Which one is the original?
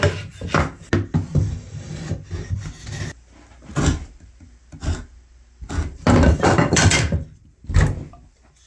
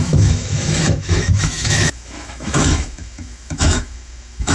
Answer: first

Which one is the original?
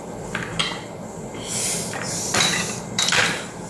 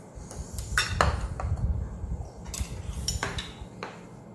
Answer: second